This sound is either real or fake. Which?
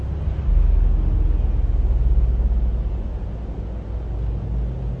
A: real